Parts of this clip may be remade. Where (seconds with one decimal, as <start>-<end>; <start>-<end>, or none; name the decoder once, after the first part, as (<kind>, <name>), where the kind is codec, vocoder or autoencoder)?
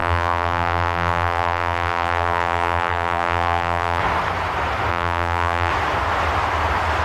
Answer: 0.0-4.0 (vocoder, BigVGAN v2); 4.9-5.7